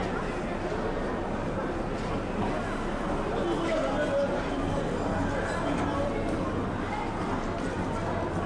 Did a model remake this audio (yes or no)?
no